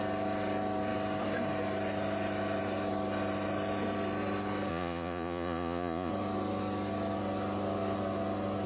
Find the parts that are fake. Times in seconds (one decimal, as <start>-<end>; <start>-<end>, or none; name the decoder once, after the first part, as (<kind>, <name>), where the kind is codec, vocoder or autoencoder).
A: 4.7-6.1 (vocoder, Vocos)